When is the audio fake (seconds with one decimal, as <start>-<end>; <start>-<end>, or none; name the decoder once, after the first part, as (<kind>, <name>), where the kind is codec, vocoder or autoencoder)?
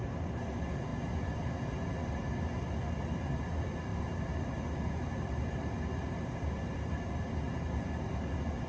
none